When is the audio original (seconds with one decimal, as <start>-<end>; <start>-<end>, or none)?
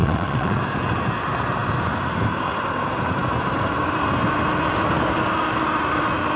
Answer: 0.6-6.4